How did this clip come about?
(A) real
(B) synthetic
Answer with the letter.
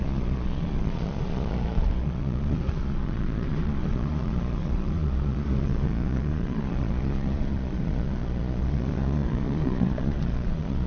B